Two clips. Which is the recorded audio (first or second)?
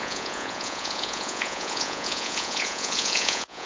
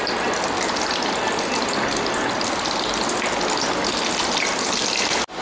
second